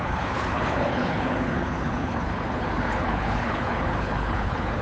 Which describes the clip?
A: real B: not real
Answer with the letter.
B